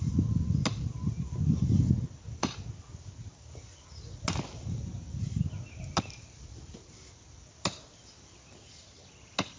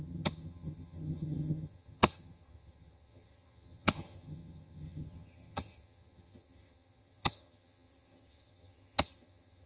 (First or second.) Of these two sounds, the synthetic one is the second